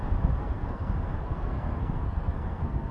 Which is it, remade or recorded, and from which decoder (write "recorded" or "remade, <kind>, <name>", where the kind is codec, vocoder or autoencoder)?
remade, codec, SNAC